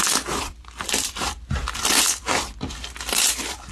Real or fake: fake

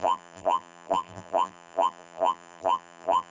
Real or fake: fake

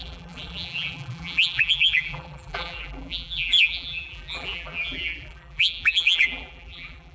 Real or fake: fake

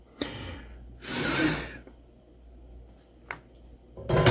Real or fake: real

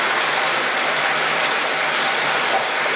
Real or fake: fake